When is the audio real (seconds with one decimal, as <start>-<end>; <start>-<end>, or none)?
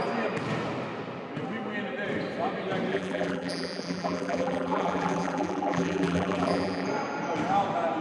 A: 0.0-2.9; 6.9-8.0